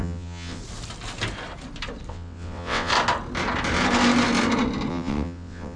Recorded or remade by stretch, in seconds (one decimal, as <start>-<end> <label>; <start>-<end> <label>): 0.0-0.6 remade; 0.6-2.1 recorded; 2.1-2.9 remade; 2.9-4.9 recorded; 4.9-5.8 remade